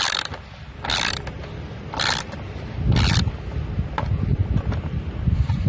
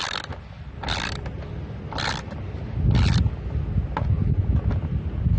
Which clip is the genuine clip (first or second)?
second